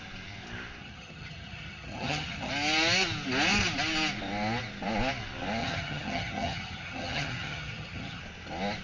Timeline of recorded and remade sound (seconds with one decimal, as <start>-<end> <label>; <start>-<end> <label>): 0.0-0.8 recorded; 0.8-2.5 remade; 2.5-5.6 recorded; 5.6-8.2 remade; 8.2-8.8 recorded